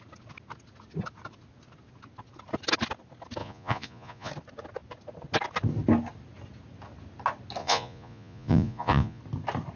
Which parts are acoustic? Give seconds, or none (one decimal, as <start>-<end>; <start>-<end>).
0.0-3.4; 4.3-7.6; 9.2-9.8